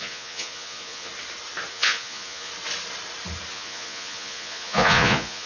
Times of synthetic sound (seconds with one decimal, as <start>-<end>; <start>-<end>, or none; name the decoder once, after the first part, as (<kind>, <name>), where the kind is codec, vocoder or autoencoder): 0.0-1.1 (vocoder, Vocos); 1.7-2.5; 3.5-5.5